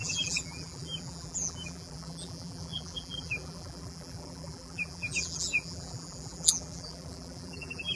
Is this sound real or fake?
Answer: fake